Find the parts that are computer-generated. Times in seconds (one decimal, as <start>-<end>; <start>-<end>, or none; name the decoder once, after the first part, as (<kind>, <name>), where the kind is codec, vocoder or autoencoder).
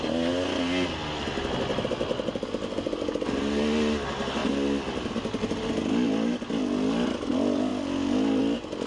none